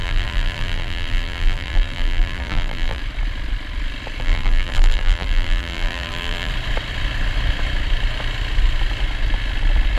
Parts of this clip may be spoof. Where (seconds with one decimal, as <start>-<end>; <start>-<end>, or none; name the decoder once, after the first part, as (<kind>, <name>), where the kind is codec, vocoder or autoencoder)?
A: 0.0-3.0 (vocoder, BigVGAN v2); 4.2-6.5